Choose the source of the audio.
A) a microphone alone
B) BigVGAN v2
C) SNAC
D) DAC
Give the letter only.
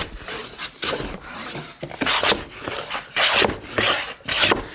A